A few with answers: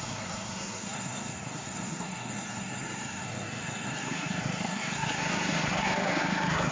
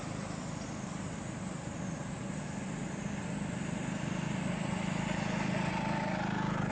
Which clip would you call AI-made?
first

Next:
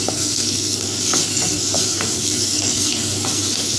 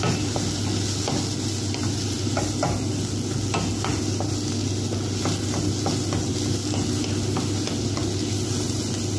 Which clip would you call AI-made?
first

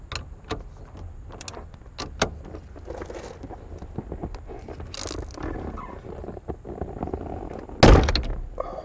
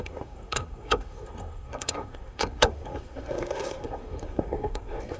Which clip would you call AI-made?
second